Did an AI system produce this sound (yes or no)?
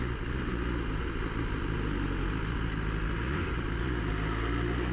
no